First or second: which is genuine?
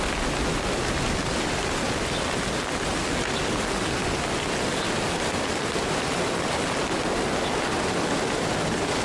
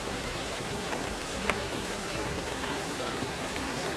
first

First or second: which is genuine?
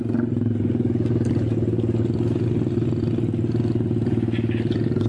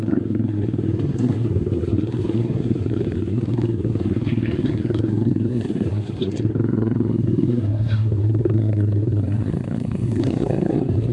first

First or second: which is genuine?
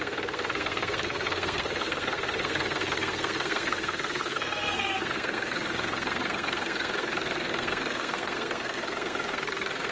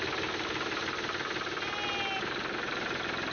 second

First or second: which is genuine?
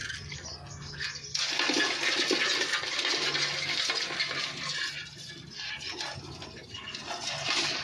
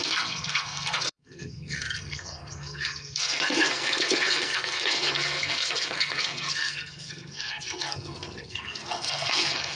first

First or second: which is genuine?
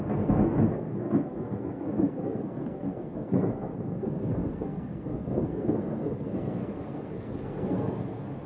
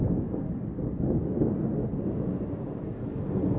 second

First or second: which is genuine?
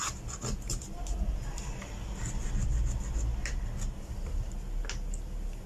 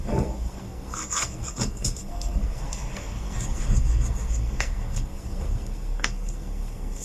first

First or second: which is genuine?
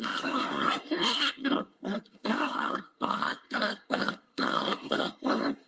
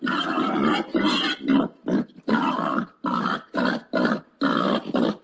second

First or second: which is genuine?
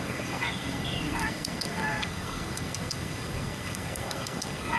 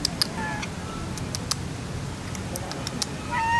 second